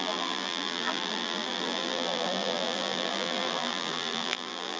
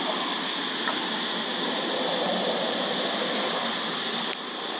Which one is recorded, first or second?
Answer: second